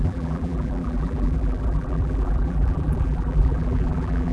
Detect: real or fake fake